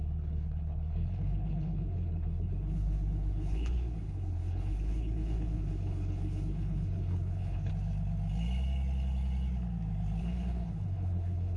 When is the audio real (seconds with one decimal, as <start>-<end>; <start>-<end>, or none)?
7.7-10.2